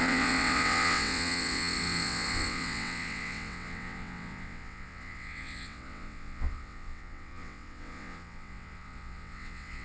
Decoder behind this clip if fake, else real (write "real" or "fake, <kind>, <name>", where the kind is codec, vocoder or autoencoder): fake, vocoder, WaveNeXt